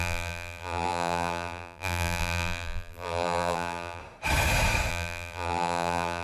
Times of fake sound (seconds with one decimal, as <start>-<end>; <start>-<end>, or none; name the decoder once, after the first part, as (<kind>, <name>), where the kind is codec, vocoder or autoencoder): 0.0-4.0 (vocoder, BigVGAN v2); 4.9-6.2